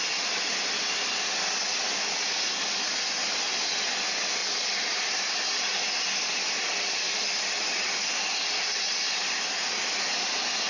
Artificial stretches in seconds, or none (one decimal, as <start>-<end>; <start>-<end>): none